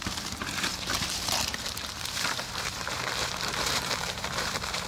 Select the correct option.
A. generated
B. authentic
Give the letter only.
A